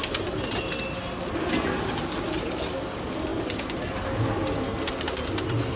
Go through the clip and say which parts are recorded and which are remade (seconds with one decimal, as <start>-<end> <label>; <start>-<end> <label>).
0.0-5.8 recorded

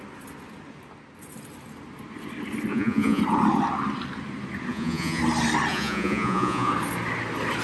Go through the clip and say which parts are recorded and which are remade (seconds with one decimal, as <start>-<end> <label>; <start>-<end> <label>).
0.0-2.7 recorded; 2.7-3.2 remade; 3.2-4.7 recorded; 4.7-5.2 remade; 5.2-5.7 recorded; 5.7-6.7 remade; 6.7-7.6 recorded

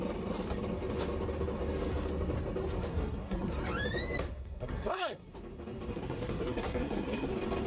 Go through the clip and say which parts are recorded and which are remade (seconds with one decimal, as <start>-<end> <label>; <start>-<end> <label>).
0.0-2.9 recorded; 2.9-3.5 remade; 3.5-4.3 recorded; 4.3-5.3 remade; 5.3-5.9 recorded; 5.9-7.3 remade; 7.3-7.7 recorded

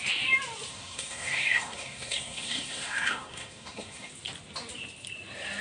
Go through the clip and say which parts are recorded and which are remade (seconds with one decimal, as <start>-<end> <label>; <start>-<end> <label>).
0.0-0.7 recorded; 0.7-4.1 remade; 4.1-5.6 recorded

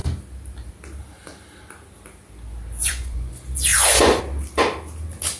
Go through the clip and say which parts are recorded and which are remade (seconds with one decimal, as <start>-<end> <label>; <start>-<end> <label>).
0.0-2.8 recorded; 2.8-3.3 remade; 3.3-3.7 recorded; 3.7-4.2 remade; 4.2-5.4 recorded

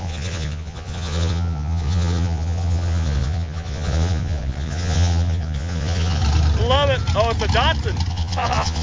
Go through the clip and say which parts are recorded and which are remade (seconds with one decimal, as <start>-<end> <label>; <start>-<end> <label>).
0.0-6.2 remade; 6.2-8.1 recorded; 8.1-8.8 remade

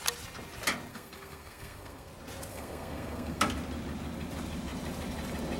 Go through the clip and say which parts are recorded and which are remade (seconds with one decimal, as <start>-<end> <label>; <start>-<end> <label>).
0.0-0.9 recorded; 0.9-2.1 remade; 2.1-2.5 recorded; 2.5-3.4 remade; 3.4-5.6 recorded

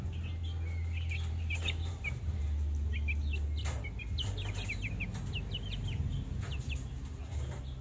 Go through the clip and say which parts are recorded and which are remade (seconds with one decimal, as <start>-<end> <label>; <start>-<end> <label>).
0.0-0.4 remade; 0.4-1.3 recorded; 1.3-2.4 remade; 2.4-6.4 recorded; 6.4-7.8 remade